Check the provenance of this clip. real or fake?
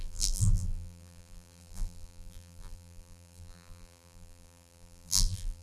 fake